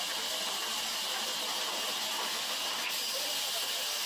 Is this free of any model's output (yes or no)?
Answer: yes